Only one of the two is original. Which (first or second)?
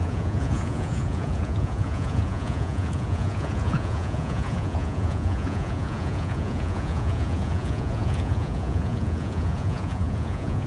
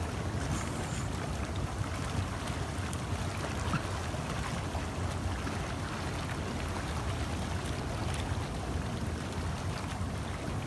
second